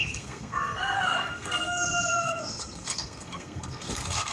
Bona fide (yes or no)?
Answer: no